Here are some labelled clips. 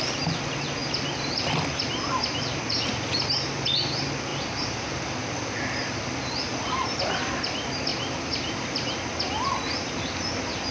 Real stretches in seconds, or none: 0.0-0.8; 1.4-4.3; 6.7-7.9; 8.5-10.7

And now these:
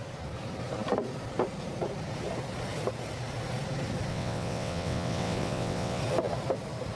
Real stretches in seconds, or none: 0.0-4.1; 6.0-7.0

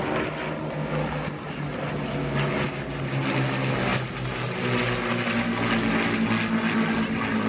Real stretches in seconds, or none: 0.0-7.5